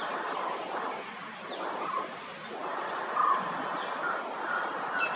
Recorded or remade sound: recorded